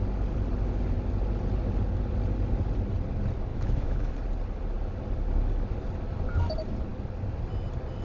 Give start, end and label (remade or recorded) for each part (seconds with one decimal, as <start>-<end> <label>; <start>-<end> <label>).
0.0-3.5 recorded; 3.5-4.1 remade; 4.1-8.0 recorded